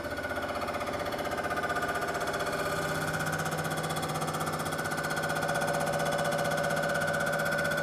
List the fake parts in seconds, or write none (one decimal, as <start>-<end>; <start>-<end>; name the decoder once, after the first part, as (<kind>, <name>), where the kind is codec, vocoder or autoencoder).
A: none